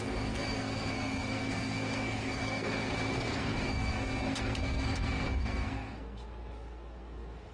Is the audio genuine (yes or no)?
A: no